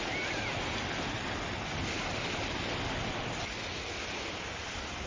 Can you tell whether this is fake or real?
real